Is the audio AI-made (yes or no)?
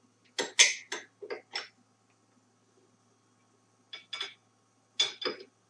no